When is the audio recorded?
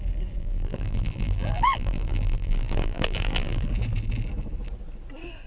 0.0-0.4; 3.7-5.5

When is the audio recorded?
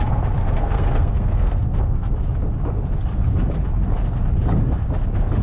0.0-0.4; 2.1-5.4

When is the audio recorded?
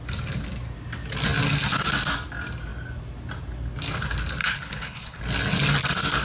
0.0-4.4; 5.2-6.2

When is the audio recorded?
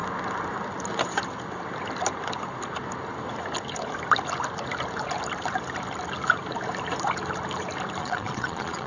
0.0-8.0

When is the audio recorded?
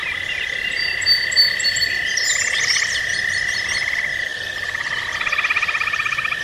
0.0-4.3; 5.0-6.4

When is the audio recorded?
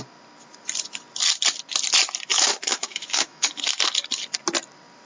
0.0-2.3; 3.6-5.1